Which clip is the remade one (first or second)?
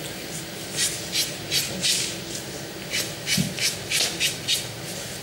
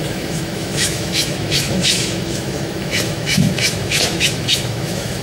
second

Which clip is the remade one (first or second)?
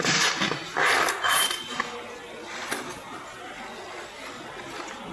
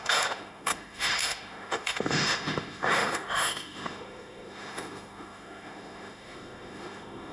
second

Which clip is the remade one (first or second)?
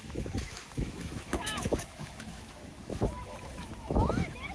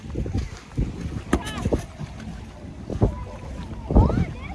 first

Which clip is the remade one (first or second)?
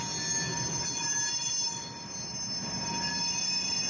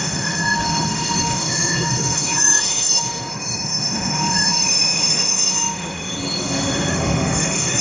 second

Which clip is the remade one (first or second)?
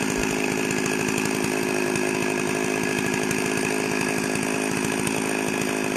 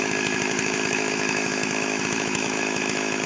second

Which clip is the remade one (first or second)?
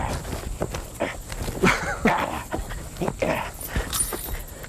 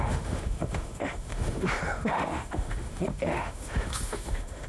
second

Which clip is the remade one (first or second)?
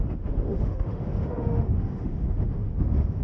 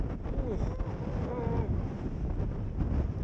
first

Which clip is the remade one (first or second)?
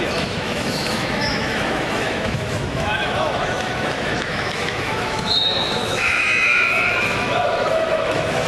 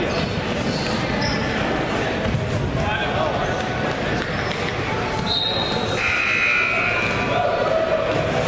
first